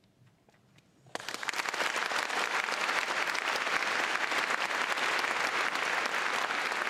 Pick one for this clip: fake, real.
real